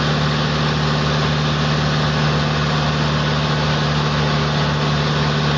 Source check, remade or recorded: recorded